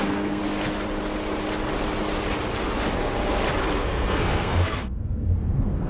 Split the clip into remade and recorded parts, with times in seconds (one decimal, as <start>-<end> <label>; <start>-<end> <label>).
0.0-0.4 remade; 0.4-3.8 recorded; 3.8-5.9 remade